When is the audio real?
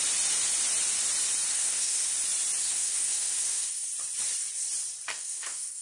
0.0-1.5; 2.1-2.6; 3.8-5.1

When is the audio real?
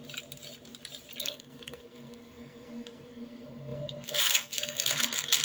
0.0-1.2